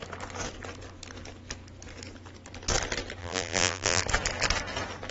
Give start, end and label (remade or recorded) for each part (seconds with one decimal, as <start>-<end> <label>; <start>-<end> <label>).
0.0-3.2 recorded; 3.2-4.0 remade; 4.0-5.1 recorded